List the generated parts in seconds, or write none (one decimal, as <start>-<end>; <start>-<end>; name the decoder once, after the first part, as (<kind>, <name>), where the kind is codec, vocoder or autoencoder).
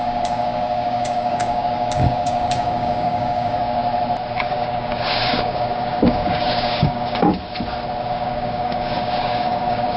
0.0-3.8 (codec, DAC); 4.4-7.3; 8.1-10.0